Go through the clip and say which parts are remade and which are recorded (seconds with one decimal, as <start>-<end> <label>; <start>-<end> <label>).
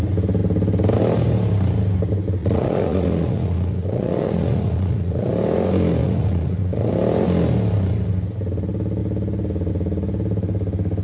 0.0-2.4 recorded; 2.4-5.3 remade; 5.3-6.0 recorded; 6.0-6.9 remade; 6.9-11.0 recorded